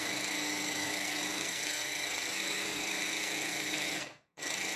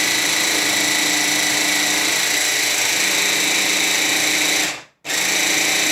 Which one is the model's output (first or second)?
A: first